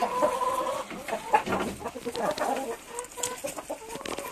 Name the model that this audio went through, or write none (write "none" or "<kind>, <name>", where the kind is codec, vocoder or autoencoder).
none